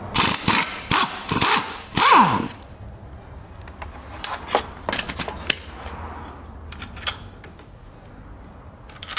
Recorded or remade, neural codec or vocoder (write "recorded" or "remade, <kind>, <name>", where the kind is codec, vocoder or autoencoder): recorded